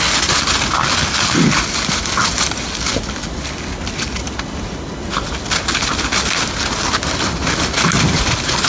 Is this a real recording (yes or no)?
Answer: yes